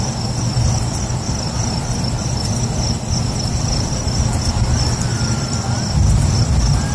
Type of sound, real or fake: real